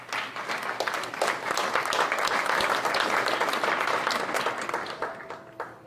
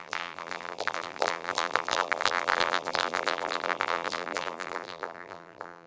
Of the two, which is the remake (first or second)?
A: second